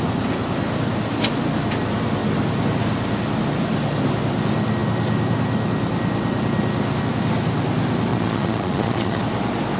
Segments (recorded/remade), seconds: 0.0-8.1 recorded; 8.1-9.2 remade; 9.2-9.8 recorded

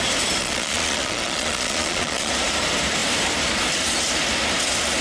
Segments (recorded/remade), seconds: 0.0-0.4 recorded; 0.4-2.3 remade; 2.3-5.0 recorded